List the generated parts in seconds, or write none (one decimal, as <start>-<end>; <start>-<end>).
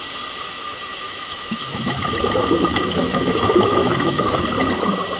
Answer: 0.9-2.0; 2.7-4.4